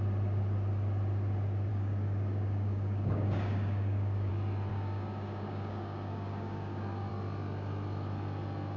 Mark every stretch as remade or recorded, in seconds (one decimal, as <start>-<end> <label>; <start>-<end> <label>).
0.0-1.7 recorded; 1.7-4.3 remade; 4.3-4.7 recorded; 4.7-7.1 remade; 7.1-8.8 recorded